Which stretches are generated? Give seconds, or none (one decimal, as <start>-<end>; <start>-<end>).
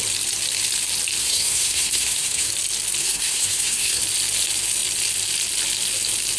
1.2-2.5; 3.0-4.0